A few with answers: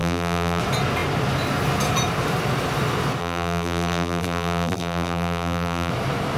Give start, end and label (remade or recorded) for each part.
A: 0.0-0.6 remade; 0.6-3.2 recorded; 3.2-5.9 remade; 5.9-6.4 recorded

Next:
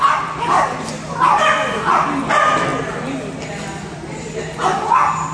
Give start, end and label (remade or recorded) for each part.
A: 0.0-2.7 remade; 2.7-3.4 recorded; 3.4-5.3 remade

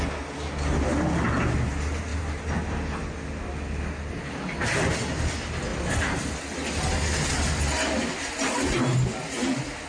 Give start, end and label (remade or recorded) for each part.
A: 0.0-9.9 recorded